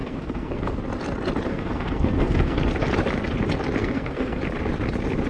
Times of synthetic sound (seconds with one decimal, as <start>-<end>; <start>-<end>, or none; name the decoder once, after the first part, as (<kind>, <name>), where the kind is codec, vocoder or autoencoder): 0.0-0.8 (codec, SNAC); 1.5-2.6; 3.8-4.4